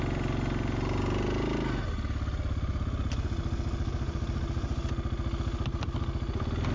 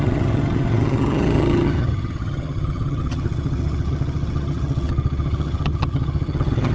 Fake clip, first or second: second